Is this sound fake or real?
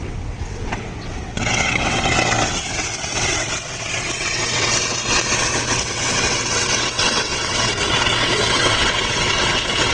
fake